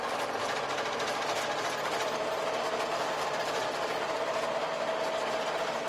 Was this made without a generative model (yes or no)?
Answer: no